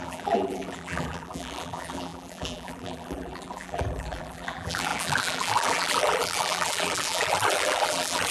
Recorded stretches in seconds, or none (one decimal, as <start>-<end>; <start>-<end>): none

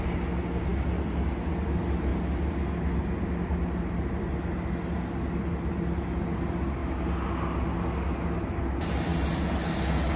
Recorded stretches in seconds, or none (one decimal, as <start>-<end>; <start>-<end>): 0.0-10.2

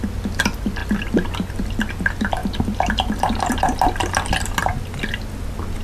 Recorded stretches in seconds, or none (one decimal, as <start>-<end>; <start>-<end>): 0.0-5.8